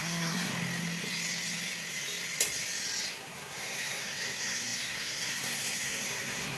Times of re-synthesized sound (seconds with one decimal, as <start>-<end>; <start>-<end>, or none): 0.0-0.5; 3.1-6.6